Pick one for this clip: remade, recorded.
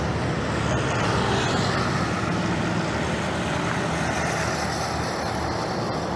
recorded